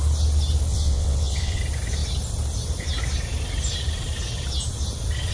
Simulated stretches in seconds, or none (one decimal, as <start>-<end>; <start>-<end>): 0.7-1.6